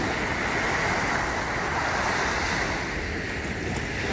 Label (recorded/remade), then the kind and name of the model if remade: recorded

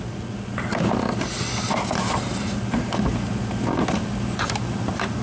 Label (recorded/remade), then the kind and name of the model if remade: recorded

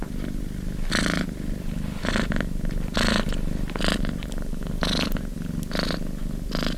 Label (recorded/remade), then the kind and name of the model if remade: recorded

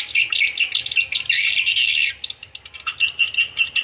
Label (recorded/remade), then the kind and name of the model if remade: recorded